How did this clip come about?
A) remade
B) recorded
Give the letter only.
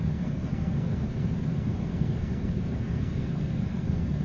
A